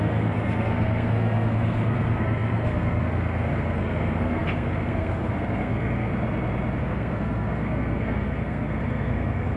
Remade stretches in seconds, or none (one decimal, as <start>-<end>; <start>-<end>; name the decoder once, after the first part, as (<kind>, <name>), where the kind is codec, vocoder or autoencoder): 0.0-6.1 (codec, SNAC); 6.8-9.6